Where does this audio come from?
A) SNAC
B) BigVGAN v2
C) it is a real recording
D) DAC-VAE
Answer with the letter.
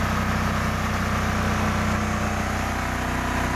C